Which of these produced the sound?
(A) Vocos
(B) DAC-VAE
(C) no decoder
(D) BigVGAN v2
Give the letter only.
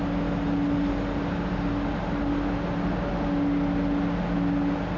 C